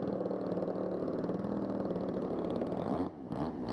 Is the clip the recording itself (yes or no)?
no